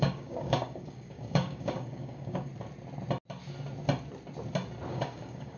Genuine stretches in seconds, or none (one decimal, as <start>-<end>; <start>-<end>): 2.5-4.9